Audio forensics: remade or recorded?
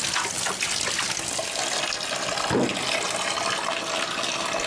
recorded